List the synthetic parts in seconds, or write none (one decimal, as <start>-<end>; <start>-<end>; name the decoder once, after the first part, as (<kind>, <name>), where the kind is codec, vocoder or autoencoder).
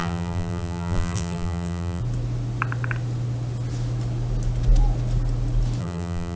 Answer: 0.0-2.0 (vocoder, BigVGAN v2); 5.8-6.4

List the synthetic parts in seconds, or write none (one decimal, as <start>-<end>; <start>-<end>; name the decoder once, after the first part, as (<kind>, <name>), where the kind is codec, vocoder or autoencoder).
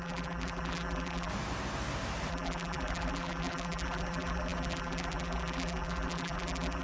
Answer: 0.0-1.3 (vocoder, BigVGAN v2); 2.3-6.8